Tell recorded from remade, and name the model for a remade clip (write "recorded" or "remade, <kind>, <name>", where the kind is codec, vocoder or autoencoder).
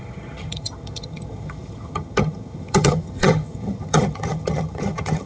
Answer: remade, vocoder, HiFi-GAN